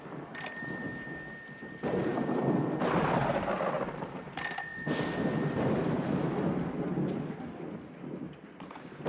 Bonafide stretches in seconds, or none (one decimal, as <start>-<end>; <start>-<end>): 0.0-9.1